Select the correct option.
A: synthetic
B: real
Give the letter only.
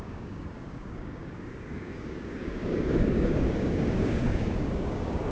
A